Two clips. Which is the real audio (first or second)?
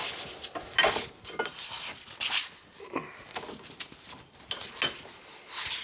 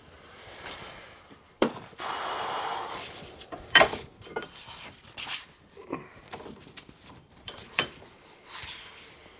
first